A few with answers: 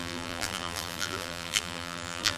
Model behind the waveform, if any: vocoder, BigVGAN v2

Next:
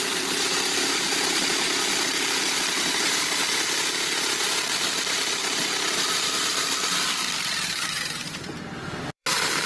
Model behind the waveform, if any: vocoder, BigVGAN v2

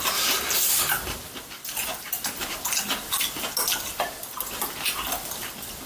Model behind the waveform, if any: none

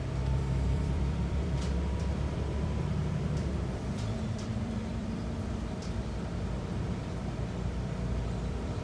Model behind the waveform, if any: vocoder, BigVGAN v2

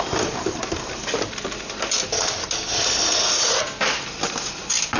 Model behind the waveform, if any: none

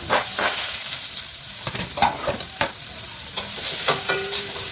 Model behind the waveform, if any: vocoder, BigVGAN v2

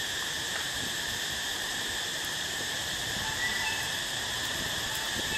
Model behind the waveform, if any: vocoder, BigVGAN v2